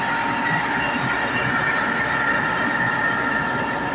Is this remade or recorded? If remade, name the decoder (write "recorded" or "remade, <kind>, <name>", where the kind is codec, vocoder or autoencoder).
recorded